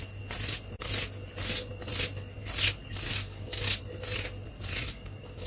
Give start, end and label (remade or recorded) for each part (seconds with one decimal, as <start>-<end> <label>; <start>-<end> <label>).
0.0-3.1 recorded; 3.1-3.8 remade; 3.8-4.8 recorded; 4.8-5.5 remade